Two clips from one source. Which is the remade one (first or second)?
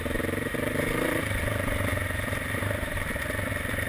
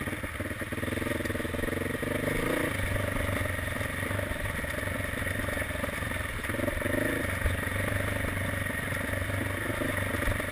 first